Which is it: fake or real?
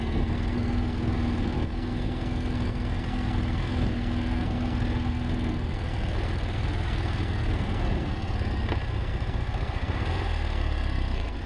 fake